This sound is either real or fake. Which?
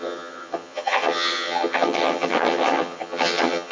fake